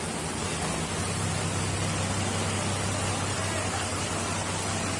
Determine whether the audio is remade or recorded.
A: recorded